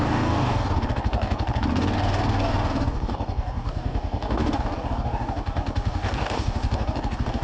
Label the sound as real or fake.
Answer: fake